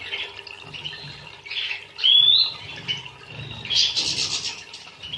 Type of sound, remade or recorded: recorded